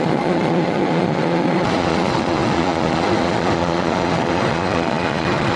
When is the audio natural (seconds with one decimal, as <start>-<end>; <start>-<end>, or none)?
none